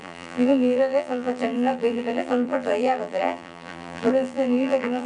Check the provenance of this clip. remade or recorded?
remade